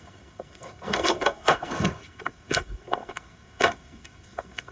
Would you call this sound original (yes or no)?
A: no